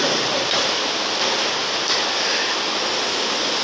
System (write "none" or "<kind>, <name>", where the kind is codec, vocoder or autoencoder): none